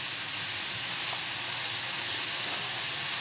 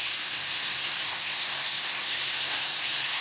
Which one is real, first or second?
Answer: first